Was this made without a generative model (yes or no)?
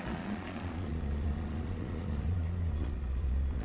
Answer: no